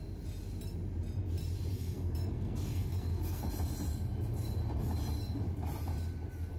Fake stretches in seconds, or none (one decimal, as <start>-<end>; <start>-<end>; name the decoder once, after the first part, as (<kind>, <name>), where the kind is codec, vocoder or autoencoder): 1.7-3.5 (codec, SNAC)